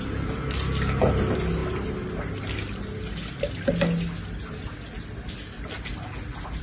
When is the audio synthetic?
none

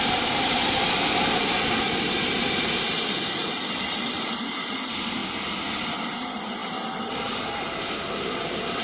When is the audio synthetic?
0.0-5.2; 5.7-8.8

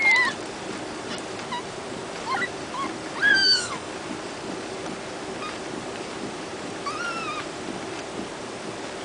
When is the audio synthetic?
3.3-3.9

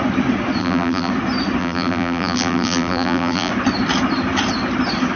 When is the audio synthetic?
0.6-1.1; 1.6-3.5